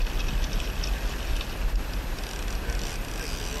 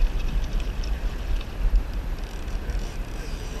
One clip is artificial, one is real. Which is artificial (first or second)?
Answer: second